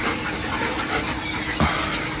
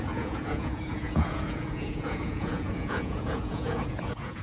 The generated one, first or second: second